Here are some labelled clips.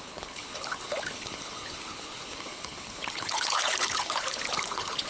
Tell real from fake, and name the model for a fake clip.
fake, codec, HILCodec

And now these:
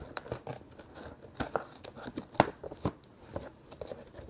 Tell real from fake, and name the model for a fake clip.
real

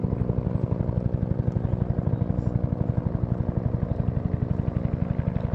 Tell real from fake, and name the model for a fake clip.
real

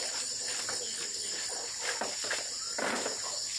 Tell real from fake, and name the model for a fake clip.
real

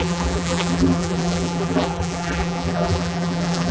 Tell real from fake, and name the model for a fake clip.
fake, vocoder, BigVGAN v2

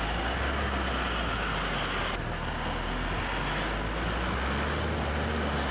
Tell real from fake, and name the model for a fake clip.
real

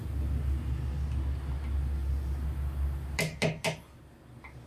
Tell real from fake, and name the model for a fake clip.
real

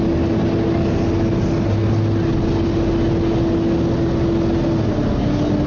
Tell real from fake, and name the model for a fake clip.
real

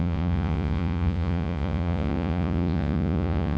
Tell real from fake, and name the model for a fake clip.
fake, vocoder, Vocos